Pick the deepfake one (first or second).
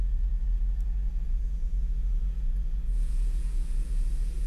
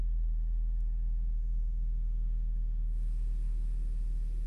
first